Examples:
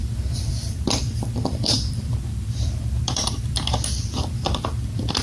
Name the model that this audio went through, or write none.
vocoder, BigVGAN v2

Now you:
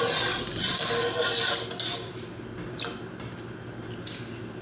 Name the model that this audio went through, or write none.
none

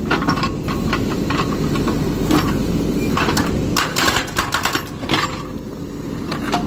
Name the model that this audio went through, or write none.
none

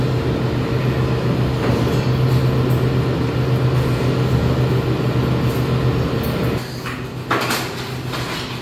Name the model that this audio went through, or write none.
none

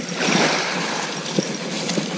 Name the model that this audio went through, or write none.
vocoder, BigVGAN v2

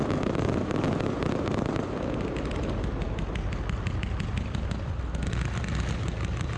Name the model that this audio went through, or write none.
none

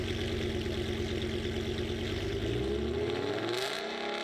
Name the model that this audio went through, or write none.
none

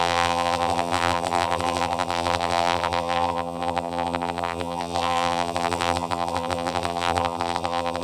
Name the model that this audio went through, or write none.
vocoder, BigVGAN v2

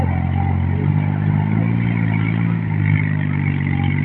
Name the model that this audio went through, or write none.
none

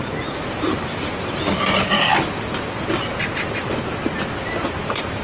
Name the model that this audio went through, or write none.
none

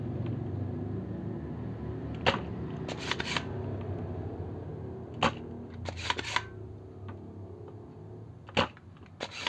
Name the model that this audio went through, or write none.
none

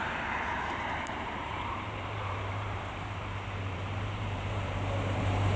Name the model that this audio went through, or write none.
vocoder, BigVGAN v2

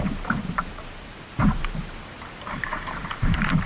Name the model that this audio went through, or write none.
vocoder, BigVGAN v2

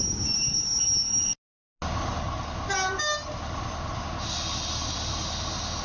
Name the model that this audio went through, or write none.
none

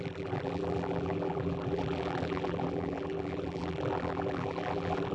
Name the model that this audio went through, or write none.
vocoder, BigVGAN v2